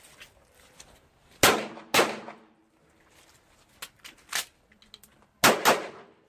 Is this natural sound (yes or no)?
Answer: yes